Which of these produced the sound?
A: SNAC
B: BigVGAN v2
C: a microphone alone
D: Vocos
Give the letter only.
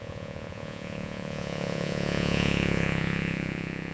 D